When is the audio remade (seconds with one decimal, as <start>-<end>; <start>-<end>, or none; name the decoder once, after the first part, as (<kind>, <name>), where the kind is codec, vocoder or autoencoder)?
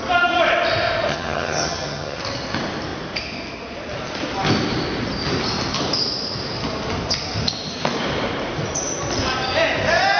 1.1-2.2 (vocoder, HiFi-GAN)